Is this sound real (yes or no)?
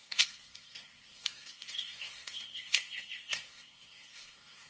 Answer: no